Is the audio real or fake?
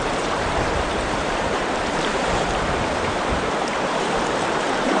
fake